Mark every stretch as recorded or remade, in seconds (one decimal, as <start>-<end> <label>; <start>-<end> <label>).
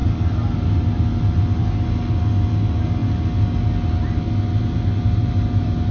0.0-5.9 recorded